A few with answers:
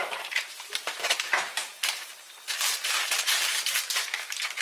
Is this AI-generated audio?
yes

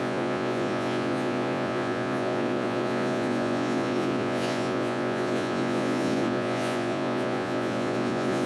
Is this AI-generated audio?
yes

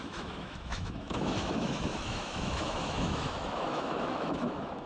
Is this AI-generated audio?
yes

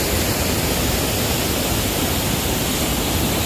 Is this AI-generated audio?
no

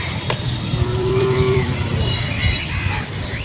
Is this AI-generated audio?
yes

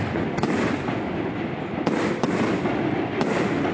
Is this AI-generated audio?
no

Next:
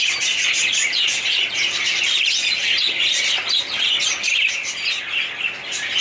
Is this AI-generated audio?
no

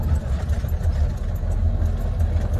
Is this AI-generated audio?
no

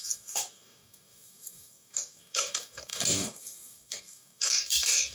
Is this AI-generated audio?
yes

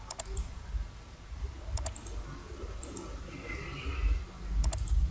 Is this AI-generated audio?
no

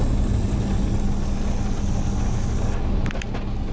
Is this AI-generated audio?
no